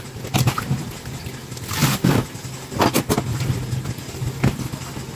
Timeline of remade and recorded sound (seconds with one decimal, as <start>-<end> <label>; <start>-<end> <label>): 0.0-5.1 recorded